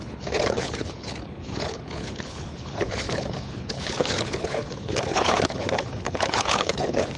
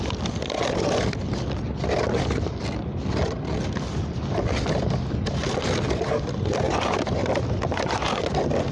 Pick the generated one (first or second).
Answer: first